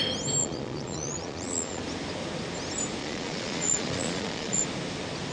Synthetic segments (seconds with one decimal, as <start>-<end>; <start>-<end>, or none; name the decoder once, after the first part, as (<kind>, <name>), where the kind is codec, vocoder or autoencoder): 0.4-1.8 (vocoder, Vocos); 3.0-4.6